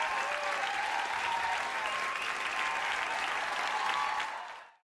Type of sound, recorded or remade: recorded